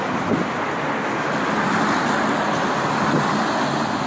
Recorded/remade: recorded